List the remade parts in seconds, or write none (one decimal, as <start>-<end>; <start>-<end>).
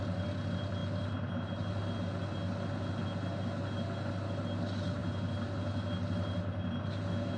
none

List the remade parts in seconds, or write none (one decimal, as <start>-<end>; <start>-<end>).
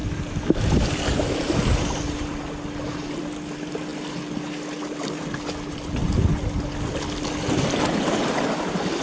none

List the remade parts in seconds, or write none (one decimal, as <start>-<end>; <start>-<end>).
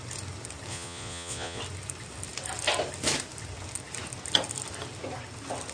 0.7-1.6